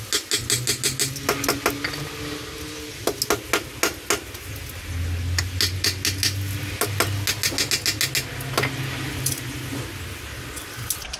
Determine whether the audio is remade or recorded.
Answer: recorded